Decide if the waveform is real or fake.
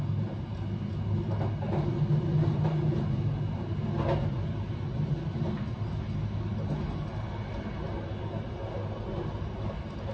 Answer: real